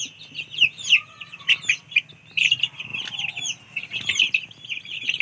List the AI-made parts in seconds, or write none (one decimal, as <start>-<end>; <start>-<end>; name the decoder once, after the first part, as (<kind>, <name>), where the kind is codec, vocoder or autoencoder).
none